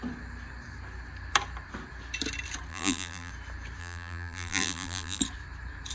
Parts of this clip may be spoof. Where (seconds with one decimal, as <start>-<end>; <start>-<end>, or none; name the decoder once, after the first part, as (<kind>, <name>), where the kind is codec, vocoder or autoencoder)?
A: 2.7-3.3 (vocoder, BigVGAN v2); 3.8-5.2